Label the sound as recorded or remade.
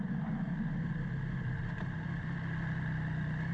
recorded